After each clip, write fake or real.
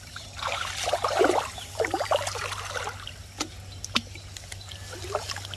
real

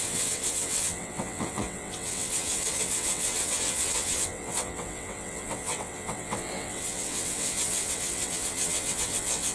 fake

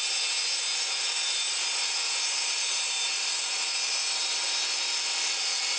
real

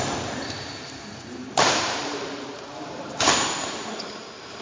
fake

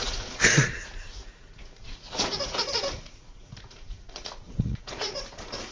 fake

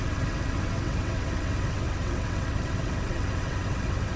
fake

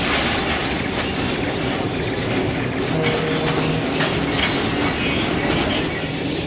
real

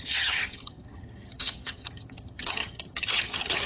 fake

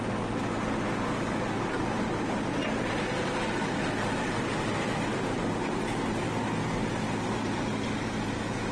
real